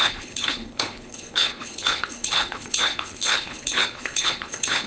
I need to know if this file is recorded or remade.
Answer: remade